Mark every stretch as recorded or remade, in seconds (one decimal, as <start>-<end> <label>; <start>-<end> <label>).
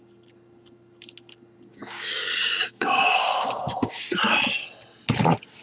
0.0-1.7 recorded; 1.7-4.0 remade; 4.0-5.6 recorded